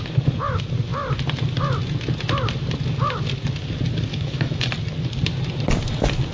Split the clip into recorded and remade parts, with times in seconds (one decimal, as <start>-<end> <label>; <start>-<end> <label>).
0.0-4.1 recorded; 4.1-4.7 remade; 4.7-6.3 recorded